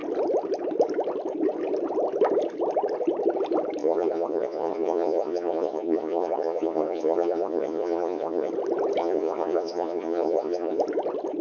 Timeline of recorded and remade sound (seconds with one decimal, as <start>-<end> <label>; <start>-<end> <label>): 0.0-3.8 recorded; 3.8-8.5 remade; 8.5-9.0 recorded; 9.0-10.8 remade; 10.8-11.4 recorded